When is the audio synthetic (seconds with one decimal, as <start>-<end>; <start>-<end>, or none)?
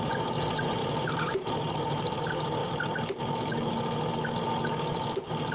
0.8-2.2